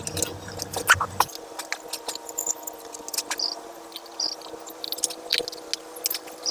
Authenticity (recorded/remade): recorded